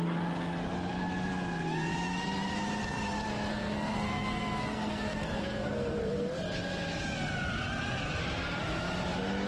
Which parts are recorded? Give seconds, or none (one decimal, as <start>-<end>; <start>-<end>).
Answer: 0.0-3.5; 6.3-9.5